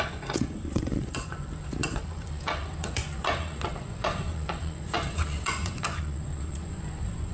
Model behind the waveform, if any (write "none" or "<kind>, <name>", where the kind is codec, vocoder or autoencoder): vocoder, Vocos